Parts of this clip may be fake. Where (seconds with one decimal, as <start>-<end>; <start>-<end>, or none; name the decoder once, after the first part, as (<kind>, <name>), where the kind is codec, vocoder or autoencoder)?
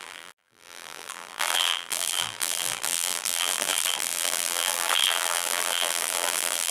0.0-6.7 (vocoder, BigVGAN v2)